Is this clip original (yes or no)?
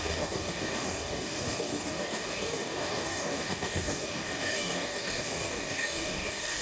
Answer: no